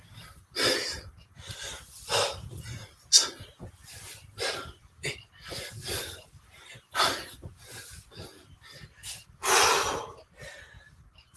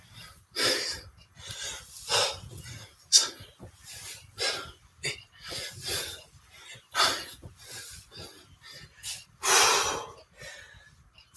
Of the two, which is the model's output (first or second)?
second